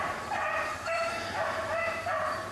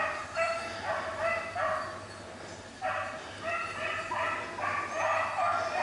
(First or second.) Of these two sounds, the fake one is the first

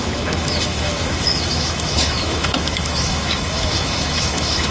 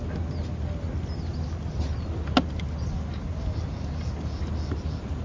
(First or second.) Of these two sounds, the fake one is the first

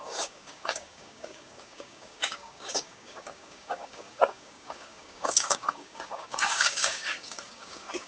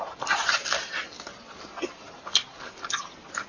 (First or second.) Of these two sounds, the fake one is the first